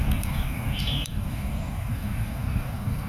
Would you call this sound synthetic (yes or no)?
yes